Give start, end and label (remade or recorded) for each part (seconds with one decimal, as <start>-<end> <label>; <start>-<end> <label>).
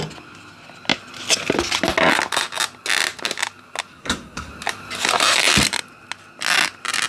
0.0-3.9 recorded; 3.9-4.5 remade; 4.5-7.1 recorded